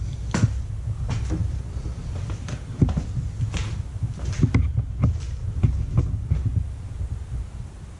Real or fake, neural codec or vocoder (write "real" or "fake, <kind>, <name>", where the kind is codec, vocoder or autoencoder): real